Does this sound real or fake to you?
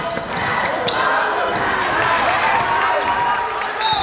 real